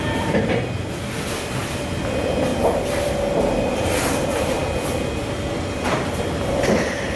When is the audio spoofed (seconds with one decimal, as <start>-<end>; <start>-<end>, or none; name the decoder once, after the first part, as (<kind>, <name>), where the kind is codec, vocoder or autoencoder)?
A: 0.0-4.6 (vocoder, BigVGAN v2); 5.2-7.2